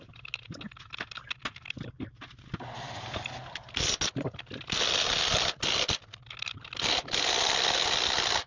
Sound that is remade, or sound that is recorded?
recorded